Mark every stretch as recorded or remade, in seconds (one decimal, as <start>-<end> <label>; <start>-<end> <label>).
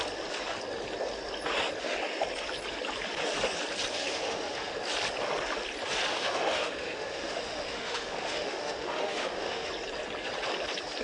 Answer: 0.0-3.9 recorded; 3.9-4.8 remade; 4.8-6.1 recorded; 6.1-9.7 remade; 9.7-11.0 recorded